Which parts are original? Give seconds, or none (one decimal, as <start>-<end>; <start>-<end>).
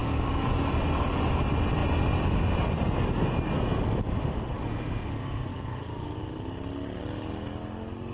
0.7-5.5; 6.2-8.1